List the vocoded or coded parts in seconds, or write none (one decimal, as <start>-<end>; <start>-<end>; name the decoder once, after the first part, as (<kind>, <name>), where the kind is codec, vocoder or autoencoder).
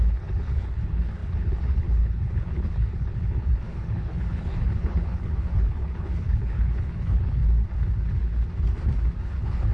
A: 0.0-7.4 (codec, HILCodec); 9.2-9.7